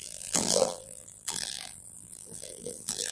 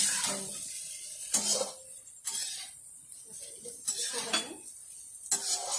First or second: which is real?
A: second